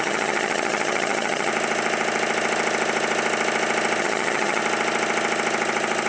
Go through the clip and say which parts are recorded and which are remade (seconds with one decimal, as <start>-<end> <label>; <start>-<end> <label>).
0.0-1.5 remade; 1.5-4.0 recorded; 4.0-4.6 remade; 4.6-6.1 recorded